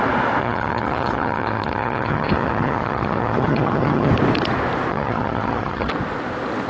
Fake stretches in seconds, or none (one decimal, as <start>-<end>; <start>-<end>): 0.4-4.1; 4.9-5.9